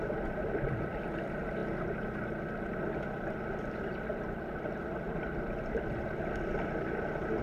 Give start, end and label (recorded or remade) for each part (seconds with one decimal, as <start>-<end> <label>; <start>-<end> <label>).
0.0-7.4 recorded